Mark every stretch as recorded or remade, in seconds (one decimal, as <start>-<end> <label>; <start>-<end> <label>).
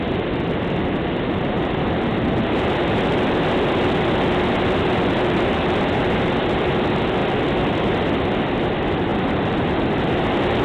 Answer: 0.0-10.6 recorded